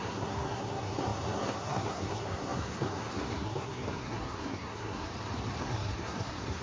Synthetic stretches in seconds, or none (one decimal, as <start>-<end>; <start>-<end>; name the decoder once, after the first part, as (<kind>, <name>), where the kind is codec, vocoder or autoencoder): 0.0-5.1 (codec, SNAC); 5.6-6.6